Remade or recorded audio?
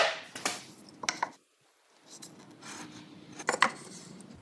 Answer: recorded